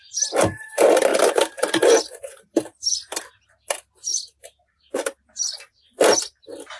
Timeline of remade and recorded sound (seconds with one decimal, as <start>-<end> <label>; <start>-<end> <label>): 0.0-1.1 recorded; 1.1-3.5 remade; 3.5-4.1 recorded; 4.1-5.2 remade; 5.2-6.8 recorded